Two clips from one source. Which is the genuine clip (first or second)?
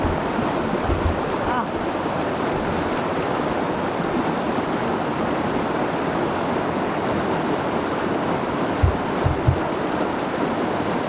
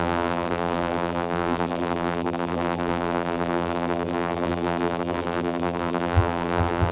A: first